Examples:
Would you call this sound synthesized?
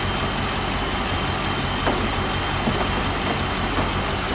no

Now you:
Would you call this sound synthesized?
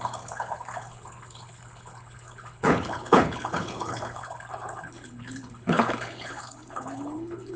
yes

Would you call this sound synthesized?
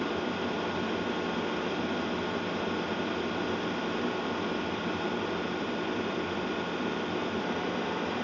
yes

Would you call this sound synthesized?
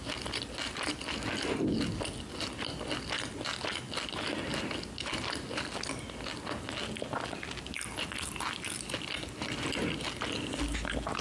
no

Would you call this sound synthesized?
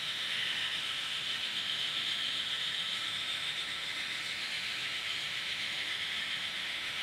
yes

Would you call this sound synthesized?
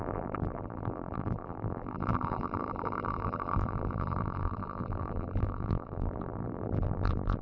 yes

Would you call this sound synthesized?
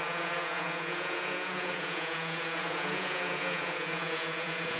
yes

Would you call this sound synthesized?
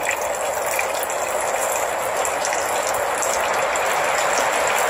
no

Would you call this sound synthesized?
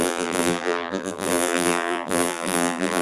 yes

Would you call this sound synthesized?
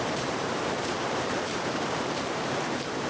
yes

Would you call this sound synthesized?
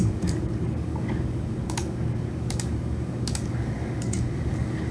yes